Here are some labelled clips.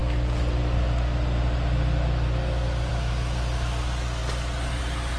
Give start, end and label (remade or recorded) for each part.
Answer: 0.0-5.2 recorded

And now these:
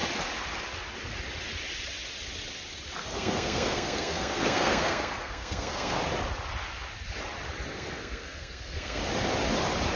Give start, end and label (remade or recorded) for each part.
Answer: 0.0-3.0 recorded; 3.0-6.0 remade; 6.0-7.7 recorded; 7.7-9.0 remade; 9.0-10.0 recorded

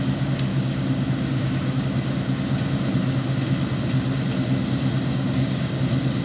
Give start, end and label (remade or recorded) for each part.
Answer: 0.0-0.5 recorded; 0.5-1.8 remade; 1.8-5.1 recorded; 5.1-5.8 remade; 5.8-6.2 recorded

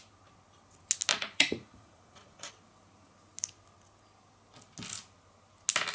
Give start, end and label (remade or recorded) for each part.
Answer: 0.0-1.1 recorded; 1.1-2.5 remade; 2.5-5.9 recorded

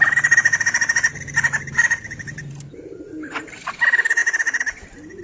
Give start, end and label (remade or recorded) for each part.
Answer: 0.0-0.4 recorded; 0.4-1.2 remade; 1.2-1.8 recorded; 1.8-2.4 remade; 2.4-4.2 recorded; 4.2-5.2 remade

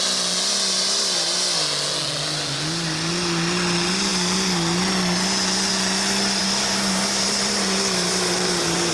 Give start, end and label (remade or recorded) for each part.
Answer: 0.0-6.4 recorded; 6.4-8.9 remade

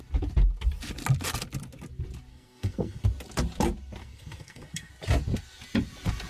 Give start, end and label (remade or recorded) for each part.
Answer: 0.0-2.3 recorded; 2.3-3.0 remade; 3.0-4.0 recorded; 4.0-4.9 remade; 4.9-6.3 recorded